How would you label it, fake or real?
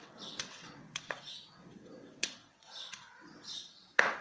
fake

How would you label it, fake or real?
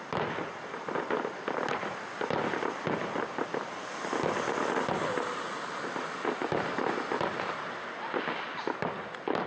real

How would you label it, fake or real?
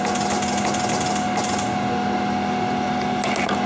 real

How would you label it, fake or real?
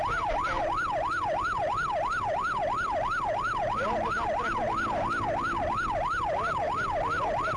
real